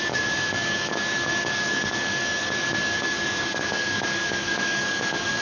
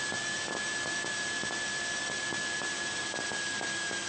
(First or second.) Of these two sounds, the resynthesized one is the first